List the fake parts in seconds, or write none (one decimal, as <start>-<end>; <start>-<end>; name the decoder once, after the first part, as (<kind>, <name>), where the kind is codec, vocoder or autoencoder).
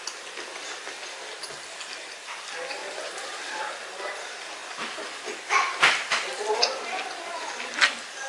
2.8-3.6 (vocoder, BigVGAN v2)